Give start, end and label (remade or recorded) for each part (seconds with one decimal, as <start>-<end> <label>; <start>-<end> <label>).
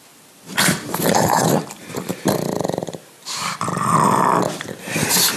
0.0-0.5 recorded; 0.5-3.7 remade; 3.7-5.4 recorded